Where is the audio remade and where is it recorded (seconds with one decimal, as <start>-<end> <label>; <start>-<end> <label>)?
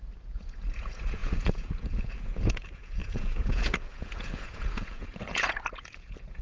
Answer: 0.0-6.4 remade